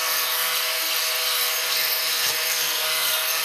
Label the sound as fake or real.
fake